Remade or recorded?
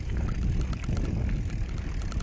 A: recorded